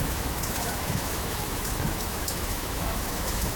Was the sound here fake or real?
fake